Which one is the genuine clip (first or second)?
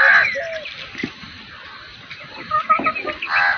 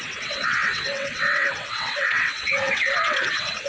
first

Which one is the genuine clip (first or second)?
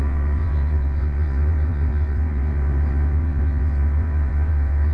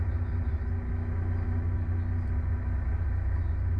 second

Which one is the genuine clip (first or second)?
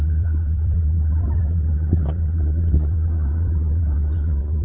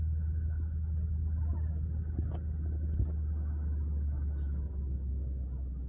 second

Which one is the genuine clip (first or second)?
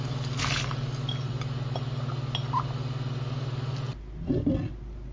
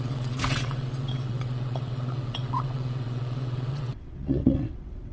first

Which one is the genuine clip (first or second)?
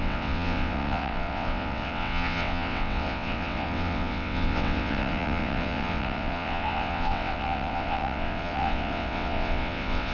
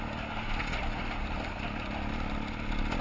second